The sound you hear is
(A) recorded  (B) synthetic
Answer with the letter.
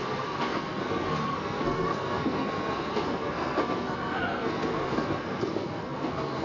B